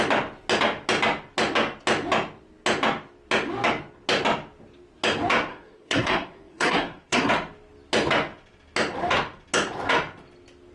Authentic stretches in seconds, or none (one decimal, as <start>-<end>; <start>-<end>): 0.0-5.5; 7.3-10.7